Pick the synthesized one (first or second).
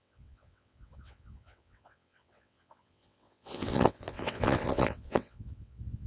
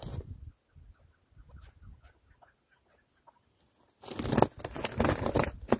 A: first